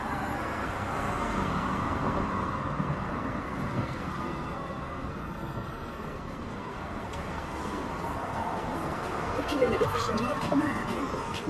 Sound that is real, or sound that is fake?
fake